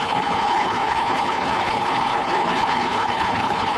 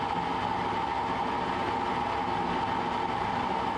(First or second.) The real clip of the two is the second